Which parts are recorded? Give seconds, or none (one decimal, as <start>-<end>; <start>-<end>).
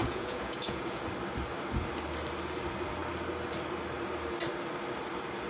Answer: 1.0-5.5